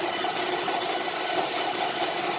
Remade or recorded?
recorded